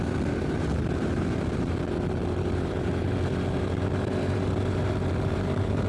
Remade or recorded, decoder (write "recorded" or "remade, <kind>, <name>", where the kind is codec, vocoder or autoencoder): remade, vocoder, BigVGAN v2